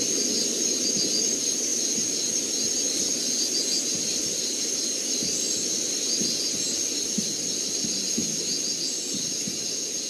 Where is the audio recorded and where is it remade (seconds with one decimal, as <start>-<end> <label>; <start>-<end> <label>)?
0.0-10.1 recorded